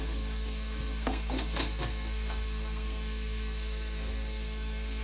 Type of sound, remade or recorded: remade